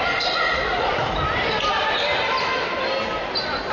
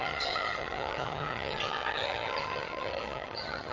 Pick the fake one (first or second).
second